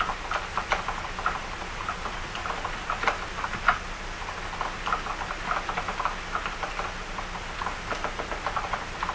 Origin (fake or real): real